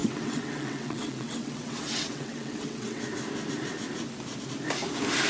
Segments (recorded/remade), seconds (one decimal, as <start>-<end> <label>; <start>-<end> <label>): 0.0-3.0 remade; 3.0-5.3 recorded